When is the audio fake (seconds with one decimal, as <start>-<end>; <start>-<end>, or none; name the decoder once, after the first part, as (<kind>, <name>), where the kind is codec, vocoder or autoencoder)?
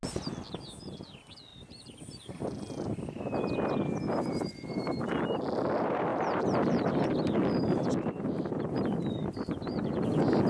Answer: 1.5-2.6 (vocoder, BigVGAN v2); 6.1-7.1